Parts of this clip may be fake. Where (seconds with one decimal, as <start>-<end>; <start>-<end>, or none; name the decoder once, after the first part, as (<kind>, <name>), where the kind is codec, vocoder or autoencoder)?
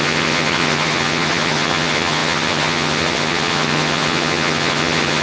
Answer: 0.0-5.2 (vocoder, HiFi-GAN)